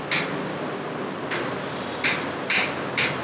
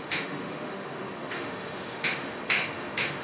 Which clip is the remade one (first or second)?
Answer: second